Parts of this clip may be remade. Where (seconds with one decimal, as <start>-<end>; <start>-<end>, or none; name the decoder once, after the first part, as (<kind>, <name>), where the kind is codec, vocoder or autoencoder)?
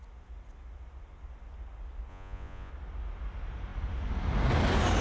2.1-2.7 (vocoder, Vocos)